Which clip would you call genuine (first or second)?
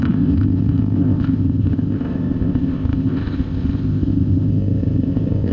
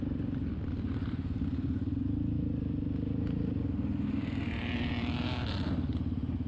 second